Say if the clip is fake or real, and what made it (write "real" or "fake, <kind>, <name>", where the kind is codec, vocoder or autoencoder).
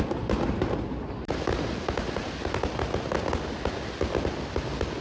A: real